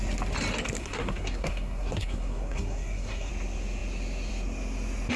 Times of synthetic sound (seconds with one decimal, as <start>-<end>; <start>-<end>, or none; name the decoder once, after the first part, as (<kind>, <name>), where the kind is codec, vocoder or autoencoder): 0.8-3.3 (codec, SNAC)